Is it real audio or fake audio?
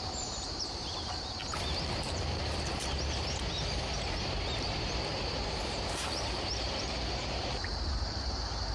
fake